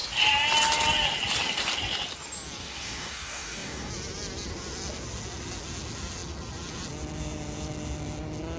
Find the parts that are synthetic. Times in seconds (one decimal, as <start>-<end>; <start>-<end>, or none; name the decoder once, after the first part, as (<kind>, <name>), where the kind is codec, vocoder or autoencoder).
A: 2.6-3.9 (codec, DAC)